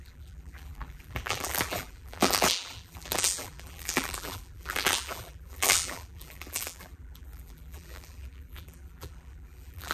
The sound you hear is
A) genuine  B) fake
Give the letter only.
B